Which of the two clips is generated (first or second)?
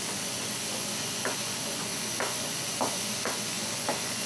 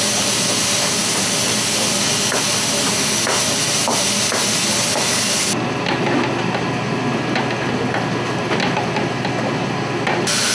first